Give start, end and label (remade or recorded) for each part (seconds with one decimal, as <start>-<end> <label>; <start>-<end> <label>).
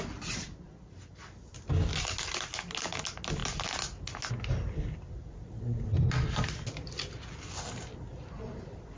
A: 0.0-9.0 recorded